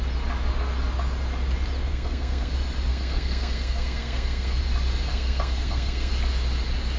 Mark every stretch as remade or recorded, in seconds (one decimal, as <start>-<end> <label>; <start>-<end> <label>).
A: 0.0-1.9 recorded; 1.9-2.5 remade; 2.5-2.9 recorded; 2.9-4.6 remade; 4.6-5.1 recorded; 5.1-6.1 remade; 6.1-7.0 recorded